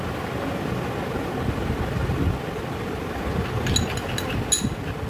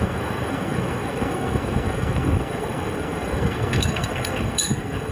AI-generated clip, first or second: second